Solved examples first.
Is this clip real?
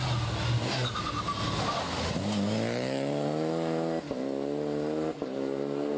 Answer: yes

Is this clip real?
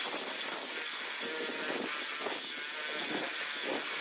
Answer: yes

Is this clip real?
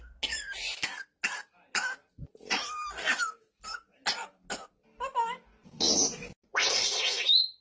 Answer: yes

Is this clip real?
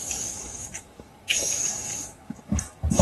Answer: no